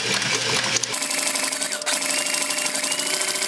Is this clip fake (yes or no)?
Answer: no